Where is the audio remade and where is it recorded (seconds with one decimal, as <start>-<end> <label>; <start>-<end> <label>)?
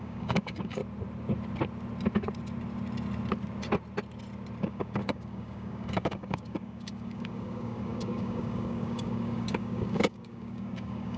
0.0-0.8 remade; 0.8-4.6 recorded; 4.6-11.2 remade